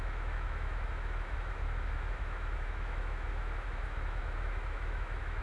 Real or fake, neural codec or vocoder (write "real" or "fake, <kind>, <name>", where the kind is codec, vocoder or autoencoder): fake, autoencoder, DAC-VAE